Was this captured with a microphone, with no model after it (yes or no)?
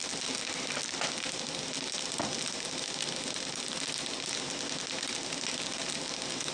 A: yes